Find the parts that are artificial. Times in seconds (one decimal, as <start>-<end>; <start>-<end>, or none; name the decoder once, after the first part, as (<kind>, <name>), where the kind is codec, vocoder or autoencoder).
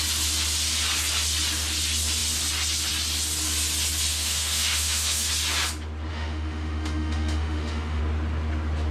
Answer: 4.1-5.3 (autoencoder, DAC-VAE); 6.1-8.0